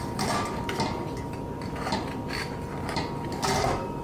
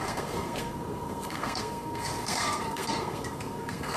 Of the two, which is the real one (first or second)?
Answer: first